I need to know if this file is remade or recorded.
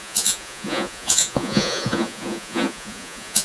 remade